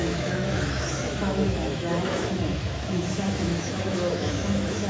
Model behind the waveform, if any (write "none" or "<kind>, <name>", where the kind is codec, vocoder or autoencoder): autoencoder, DAC-VAE